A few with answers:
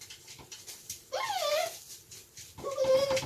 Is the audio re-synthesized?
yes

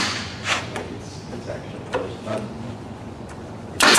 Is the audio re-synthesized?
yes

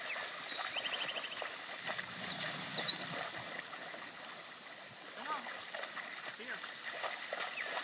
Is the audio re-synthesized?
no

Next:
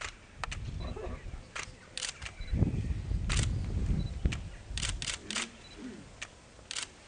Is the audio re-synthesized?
no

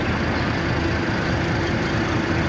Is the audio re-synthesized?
no